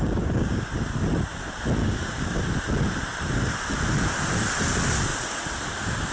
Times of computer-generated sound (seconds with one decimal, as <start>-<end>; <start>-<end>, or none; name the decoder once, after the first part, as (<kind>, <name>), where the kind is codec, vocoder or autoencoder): 0.0-0.7 (codec, DAC); 1.8-2.4